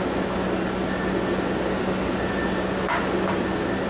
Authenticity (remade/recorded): recorded